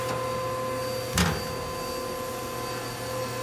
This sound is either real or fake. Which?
real